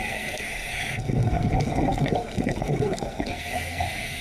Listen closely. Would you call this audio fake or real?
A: fake